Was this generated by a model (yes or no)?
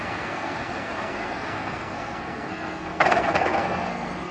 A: yes